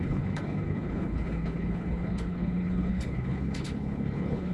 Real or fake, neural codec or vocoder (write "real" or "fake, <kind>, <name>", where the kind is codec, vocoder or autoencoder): fake, codec, HILCodec